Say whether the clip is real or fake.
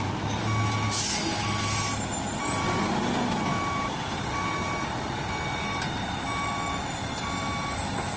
real